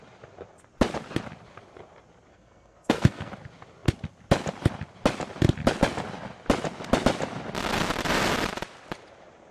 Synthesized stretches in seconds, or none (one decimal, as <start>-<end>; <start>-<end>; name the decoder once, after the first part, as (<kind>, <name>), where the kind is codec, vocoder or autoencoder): 2.3-3.3 (codec, SNAC)